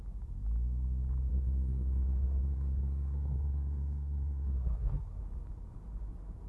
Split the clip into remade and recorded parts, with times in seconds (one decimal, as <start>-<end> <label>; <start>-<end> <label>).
0.0-1.3 recorded; 1.3-5.2 remade; 5.2-6.5 recorded